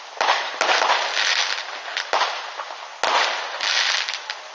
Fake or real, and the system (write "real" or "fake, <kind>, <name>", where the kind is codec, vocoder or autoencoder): real